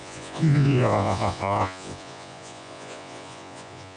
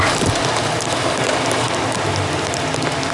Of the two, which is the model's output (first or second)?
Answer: first